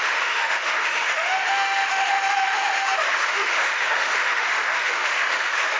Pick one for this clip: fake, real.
fake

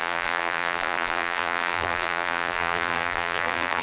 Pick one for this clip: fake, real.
fake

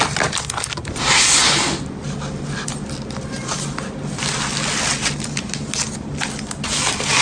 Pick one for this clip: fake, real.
real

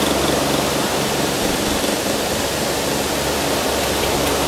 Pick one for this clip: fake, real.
fake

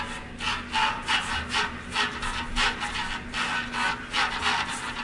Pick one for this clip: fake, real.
real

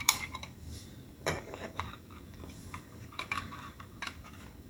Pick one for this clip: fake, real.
fake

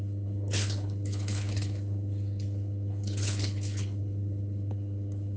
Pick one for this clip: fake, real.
fake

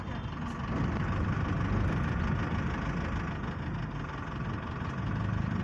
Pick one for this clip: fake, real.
real